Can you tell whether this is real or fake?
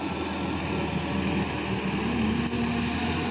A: real